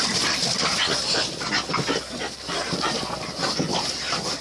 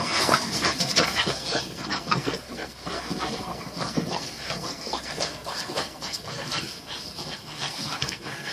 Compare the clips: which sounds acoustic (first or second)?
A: first